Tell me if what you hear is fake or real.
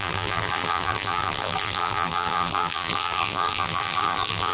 fake